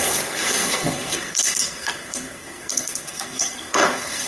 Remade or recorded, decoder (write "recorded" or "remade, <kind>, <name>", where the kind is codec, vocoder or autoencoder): remade, codec, SNAC